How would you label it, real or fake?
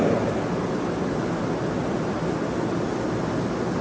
real